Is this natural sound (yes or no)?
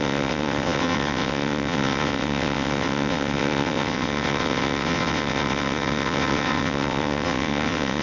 no